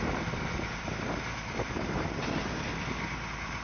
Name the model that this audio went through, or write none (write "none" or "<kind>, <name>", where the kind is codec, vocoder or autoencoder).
none